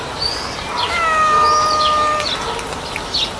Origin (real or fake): real